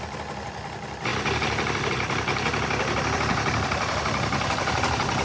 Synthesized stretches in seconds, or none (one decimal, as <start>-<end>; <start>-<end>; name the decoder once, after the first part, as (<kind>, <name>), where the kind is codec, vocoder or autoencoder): none